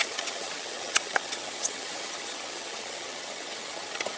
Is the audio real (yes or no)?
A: no